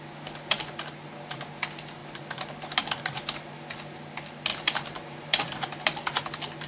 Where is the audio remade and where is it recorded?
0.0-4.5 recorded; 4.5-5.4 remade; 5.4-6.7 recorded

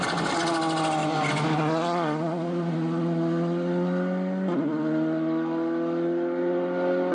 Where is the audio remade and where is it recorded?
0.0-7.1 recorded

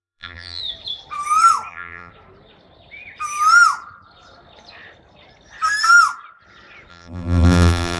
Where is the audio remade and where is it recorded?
0.0-0.6 remade; 0.6-1.7 recorded; 1.7-2.1 remade; 2.1-6.9 recorded; 6.9-8.0 remade

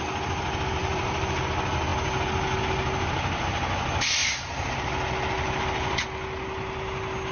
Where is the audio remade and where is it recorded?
0.0-0.8 recorded; 0.8-1.4 remade; 1.4-4.2 recorded; 4.2-4.9 remade; 4.9-7.3 recorded

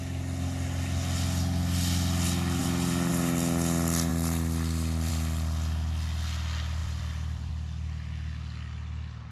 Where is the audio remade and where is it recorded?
0.0-2.6 recorded; 2.6-3.1 remade; 3.1-6.8 recorded; 6.8-7.5 remade; 7.5-9.3 recorded